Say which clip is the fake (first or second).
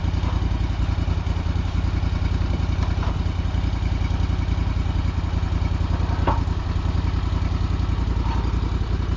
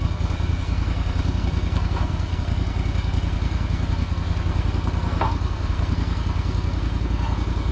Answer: second